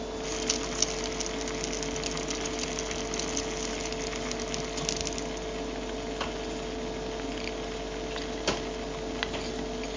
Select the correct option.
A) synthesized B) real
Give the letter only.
B